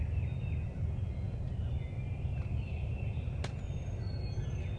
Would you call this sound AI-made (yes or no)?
no